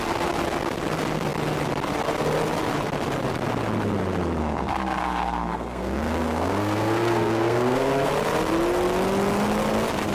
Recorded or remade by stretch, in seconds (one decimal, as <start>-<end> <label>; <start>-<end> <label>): 0.0-4.4 recorded; 4.4-8.1 remade; 8.1-10.1 recorded